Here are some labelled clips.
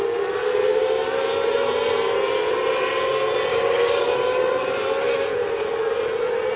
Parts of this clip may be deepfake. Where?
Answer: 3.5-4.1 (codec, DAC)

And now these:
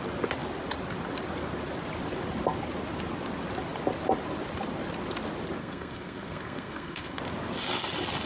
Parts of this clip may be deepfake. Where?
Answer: 5.6-7.2 (codec, SNAC)

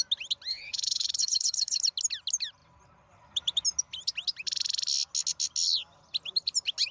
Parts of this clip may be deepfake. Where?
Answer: 0.5-1.8 (codec, HILCodec)

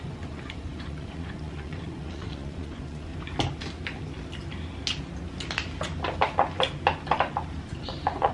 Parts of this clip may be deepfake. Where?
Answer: 0.0-3.1 (vocoder, Vocos); 7.7-8.3

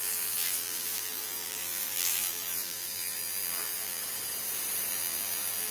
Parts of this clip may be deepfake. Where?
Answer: 0.0-4.0 (vocoder, BigVGAN v2); 4.9-5.7

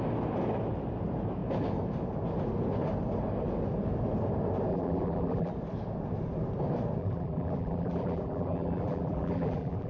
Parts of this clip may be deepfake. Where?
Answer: 4.7-5.5 (vocoder, BigVGAN v2); 7.0-9.9

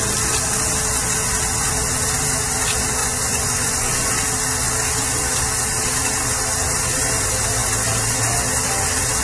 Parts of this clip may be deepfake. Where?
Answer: 3.0-4.1 (vocoder, Vocos)